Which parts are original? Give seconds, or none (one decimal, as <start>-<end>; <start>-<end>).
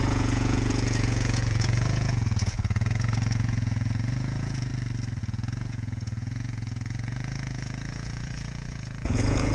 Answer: 4.7-5.2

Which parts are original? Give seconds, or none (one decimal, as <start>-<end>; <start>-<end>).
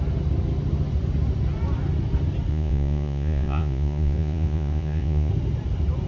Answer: 0.0-2.5; 5.3-6.1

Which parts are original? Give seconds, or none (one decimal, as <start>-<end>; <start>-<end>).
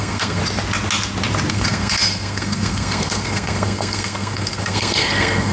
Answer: 0.4-1.5